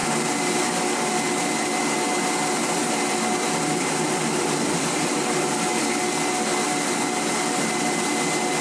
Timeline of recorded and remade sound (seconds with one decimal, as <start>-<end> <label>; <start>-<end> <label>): 0.0-8.6 recorded